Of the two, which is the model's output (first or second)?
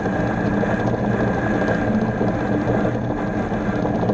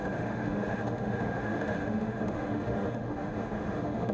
second